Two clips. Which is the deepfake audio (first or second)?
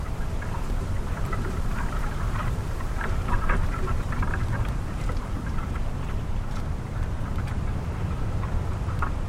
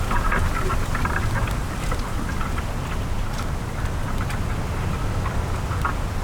first